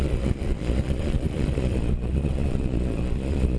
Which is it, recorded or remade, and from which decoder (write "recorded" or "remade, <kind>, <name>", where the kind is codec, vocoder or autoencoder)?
remade, vocoder, Vocos